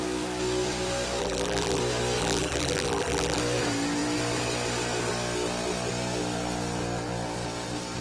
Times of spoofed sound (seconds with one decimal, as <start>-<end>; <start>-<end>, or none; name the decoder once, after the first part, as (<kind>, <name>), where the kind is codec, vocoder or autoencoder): 1.2-1.8 (vocoder, BigVGAN v2); 2.2-3.4